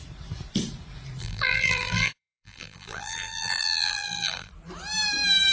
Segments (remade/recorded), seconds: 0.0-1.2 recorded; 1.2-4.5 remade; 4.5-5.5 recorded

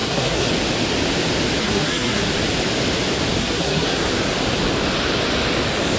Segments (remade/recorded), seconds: 0.0-0.5 remade; 0.5-1.6 recorded; 1.6-2.3 remade; 2.3-3.4 recorded; 3.4-4.0 remade; 4.0-6.0 recorded

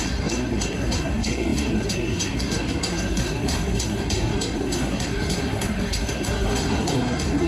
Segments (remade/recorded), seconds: 0.0-7.5 remade

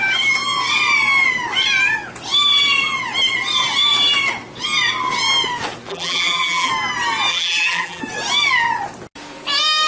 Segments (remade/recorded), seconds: 0.0-5.9 recorded; 5.9-6.7 remade; 6.7-7.3 recorded; 7.3-8.0 remade; 8.0-9.9 recorded

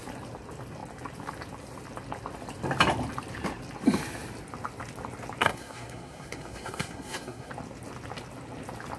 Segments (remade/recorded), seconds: 0.0-5.4 recorded; 5.4-7.5 remade; 7.5-9.0 recorded